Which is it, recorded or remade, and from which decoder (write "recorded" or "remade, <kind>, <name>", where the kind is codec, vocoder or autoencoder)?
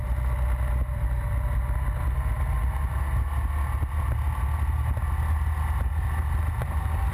recorded